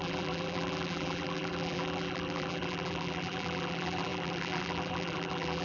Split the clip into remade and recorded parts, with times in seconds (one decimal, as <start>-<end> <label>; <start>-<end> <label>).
0.0-5.6 remade